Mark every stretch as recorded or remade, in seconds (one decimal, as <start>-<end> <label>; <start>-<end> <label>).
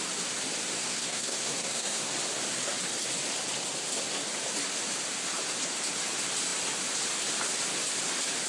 0.0-0.8 recorded; 0.8-2.1 remade; 2.1-8.5 recorded